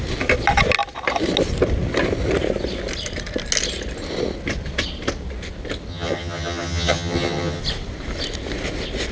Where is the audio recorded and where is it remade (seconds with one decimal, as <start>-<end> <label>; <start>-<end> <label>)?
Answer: 0.0-5.9 recorded; 5.9-7.6 remade; 7.6-9.1 recorded